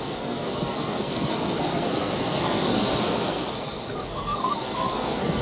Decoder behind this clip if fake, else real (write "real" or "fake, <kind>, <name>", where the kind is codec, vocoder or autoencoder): fake, codec, SNAC